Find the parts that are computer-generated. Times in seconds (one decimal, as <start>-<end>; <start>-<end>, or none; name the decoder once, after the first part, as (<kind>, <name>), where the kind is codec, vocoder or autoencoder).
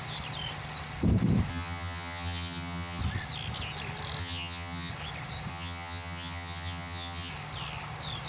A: 1.5-3.0 (vocoder, HiFi-GAN); 4.2-4.9; 5.5-7.3